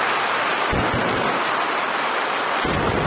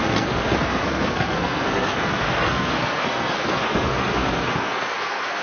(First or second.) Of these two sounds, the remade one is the second